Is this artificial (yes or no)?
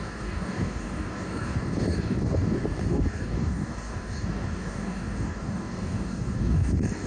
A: yes